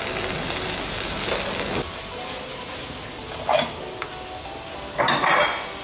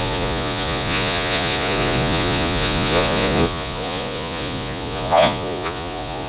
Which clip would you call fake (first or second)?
second